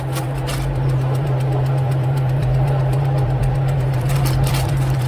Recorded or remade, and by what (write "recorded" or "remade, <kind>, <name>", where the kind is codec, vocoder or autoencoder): remade, vocoder, BigVGAN v2